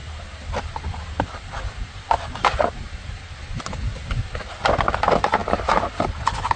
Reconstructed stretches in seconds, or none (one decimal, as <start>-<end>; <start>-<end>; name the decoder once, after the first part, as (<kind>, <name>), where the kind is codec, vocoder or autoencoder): 0.0-3.3 (vocoder, BigVGAN v2)